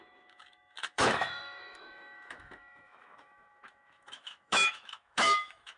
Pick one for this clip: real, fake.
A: fake